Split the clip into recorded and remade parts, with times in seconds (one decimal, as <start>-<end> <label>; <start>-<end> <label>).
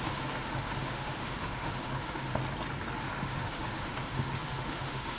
0.0-2.4 remade; 2.4-3.0 recorded; 3.0-5.2 remade